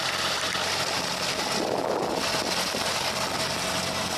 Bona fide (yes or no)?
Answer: yes